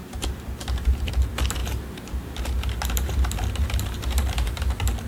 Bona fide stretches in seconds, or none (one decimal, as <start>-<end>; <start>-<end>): 1.1-1.6; 4.6-5.1